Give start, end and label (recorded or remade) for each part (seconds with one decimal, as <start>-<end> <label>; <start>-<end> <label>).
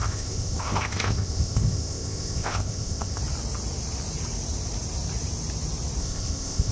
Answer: 0.0-3.2 remade; 3.2-6.0 recorded; 6.0-6.7 remade